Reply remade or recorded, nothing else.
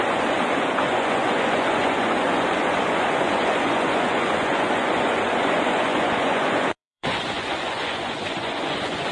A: remade